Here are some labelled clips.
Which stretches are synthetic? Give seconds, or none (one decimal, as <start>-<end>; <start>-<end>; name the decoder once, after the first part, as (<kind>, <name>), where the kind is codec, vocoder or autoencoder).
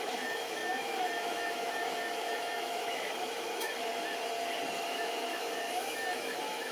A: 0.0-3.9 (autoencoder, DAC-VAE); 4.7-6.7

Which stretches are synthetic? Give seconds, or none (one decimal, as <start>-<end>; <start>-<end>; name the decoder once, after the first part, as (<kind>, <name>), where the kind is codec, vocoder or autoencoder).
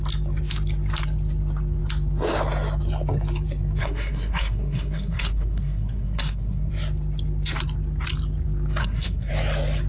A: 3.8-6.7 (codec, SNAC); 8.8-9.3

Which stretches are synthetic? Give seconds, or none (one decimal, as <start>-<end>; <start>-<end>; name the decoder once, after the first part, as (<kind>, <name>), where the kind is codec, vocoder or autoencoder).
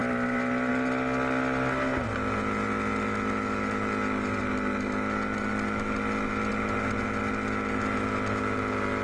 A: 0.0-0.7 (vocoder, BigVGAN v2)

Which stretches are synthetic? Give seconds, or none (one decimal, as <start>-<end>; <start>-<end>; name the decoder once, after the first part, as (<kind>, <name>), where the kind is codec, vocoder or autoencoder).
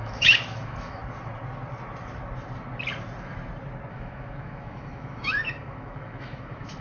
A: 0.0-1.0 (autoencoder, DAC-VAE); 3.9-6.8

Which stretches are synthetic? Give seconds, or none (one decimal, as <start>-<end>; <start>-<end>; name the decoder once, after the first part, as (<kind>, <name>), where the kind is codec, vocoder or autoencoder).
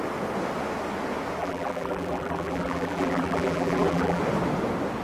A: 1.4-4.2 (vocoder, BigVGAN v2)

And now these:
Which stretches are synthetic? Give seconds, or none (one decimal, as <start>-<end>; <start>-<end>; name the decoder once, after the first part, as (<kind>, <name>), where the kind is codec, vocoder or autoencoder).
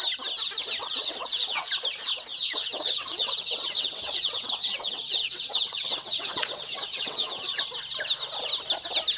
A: 0.8-1.7 (vocoder, WaveNeXt); 2.3-7.6